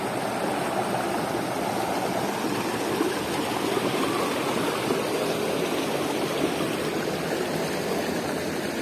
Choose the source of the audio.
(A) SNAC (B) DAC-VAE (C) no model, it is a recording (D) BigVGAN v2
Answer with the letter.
C